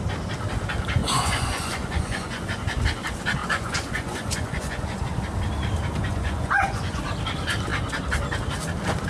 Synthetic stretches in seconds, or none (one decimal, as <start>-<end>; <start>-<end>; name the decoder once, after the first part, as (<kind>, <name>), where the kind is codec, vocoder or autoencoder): 1.0-2.4 (vocoder, Vocos); 3.4-5.0; 6.0-7.0